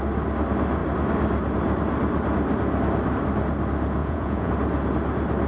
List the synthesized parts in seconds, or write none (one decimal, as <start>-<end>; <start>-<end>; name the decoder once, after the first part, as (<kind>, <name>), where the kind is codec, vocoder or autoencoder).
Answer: 4.0-4.5 (vocoder, Vocos)